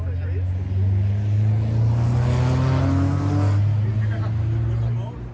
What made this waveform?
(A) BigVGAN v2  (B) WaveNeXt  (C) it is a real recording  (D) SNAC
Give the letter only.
C